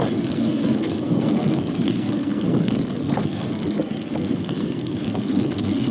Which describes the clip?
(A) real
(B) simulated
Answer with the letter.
B